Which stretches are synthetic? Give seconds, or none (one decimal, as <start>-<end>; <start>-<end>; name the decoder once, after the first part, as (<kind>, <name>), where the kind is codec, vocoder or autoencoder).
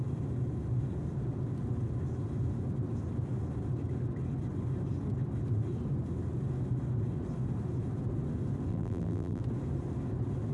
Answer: 8.7-9.4 (vocoder, BigVGAN v2)